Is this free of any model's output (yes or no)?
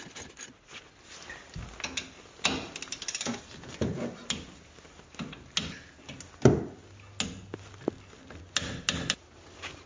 yes